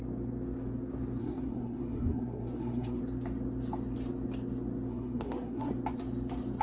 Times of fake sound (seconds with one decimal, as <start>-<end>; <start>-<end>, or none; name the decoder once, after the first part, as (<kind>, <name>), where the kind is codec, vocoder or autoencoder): 1.2-3.0 (codec, SNAC); 4.9-5.7